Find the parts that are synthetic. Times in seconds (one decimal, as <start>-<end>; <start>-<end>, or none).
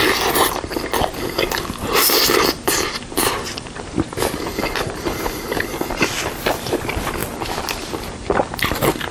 2.0-5.4